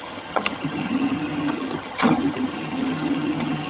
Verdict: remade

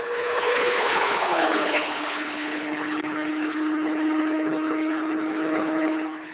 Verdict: remade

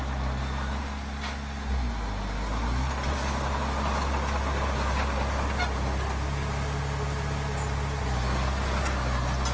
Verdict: recorded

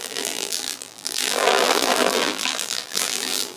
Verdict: remade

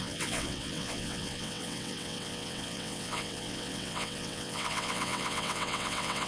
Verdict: remade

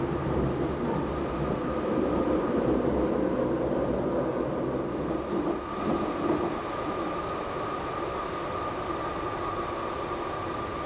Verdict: recorded